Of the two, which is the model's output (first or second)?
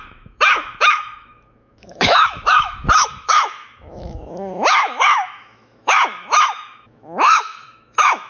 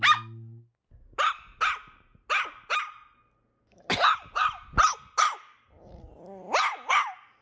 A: first